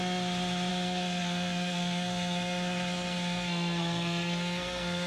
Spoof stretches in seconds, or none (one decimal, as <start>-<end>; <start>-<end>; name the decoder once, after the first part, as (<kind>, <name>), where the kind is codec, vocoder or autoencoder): 0.7-5.1 (codec, SNAC)